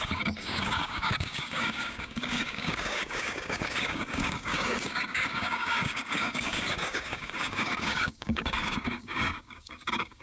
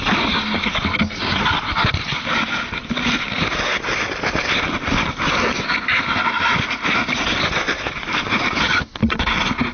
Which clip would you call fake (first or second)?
first